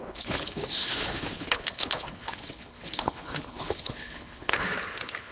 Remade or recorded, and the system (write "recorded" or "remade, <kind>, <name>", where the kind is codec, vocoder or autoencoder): remade, codec, HILCodec